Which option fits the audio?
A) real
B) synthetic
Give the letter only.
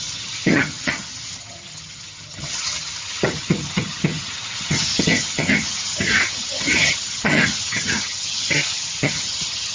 B